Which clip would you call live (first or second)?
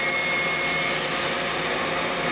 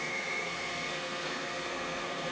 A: first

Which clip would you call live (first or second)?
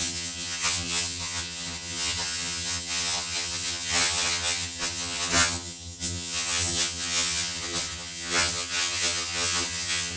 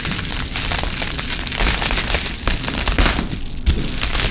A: second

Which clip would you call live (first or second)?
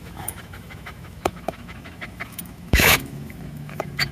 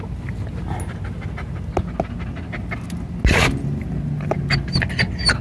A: second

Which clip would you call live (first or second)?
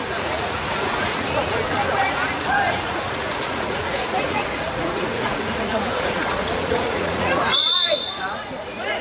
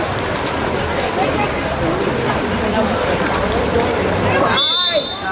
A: second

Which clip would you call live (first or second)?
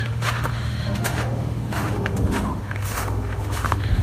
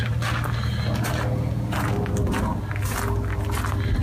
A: second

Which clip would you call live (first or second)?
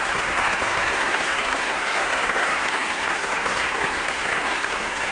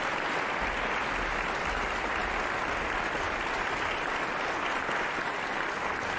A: second